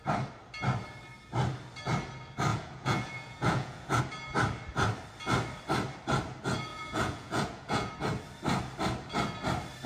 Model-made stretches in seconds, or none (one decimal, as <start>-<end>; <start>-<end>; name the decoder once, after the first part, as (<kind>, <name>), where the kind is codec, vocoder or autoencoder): 2.5-4.0 (vocoder, Vocos); 6.7-7.9

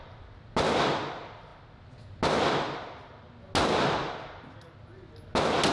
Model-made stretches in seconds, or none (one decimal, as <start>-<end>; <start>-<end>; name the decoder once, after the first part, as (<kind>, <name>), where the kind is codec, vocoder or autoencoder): none

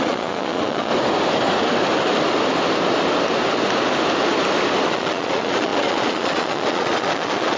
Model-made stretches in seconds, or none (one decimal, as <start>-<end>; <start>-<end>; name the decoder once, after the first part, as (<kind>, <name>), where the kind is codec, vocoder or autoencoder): 0.0-0.9 (vocoder, Vocos); 4.9-7.6

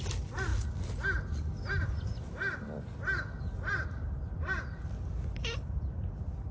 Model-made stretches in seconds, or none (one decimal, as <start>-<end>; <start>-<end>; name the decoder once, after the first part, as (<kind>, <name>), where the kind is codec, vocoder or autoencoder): none

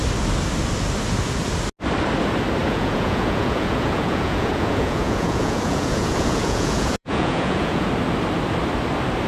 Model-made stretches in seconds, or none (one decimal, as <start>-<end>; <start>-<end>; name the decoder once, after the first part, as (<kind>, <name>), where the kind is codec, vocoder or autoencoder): 2.6-7.9 (vocoder, Vocos)

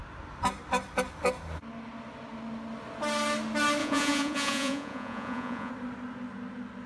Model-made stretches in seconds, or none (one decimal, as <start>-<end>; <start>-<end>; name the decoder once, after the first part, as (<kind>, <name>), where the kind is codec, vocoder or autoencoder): 3.8-5.7 (vocoder, Vocos)

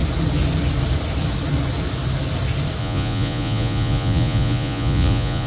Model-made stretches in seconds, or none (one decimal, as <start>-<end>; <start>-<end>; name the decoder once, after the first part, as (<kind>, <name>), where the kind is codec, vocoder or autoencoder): 2.8-5.5 (vocoder, Vocos)

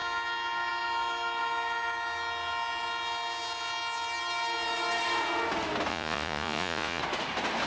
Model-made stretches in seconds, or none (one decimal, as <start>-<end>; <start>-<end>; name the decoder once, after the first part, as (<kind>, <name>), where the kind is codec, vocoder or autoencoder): 5.9-7.0 (vocoder, Vocos)